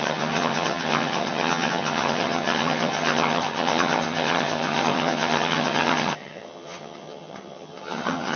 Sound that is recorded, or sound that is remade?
remade